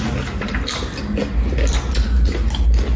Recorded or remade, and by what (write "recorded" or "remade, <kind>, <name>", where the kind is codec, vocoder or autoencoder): recorded